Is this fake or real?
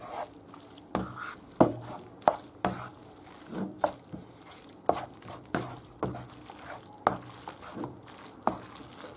real